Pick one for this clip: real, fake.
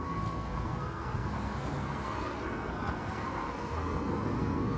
fake